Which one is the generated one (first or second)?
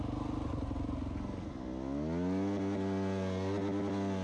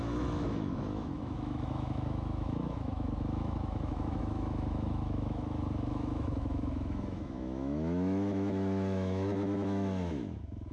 second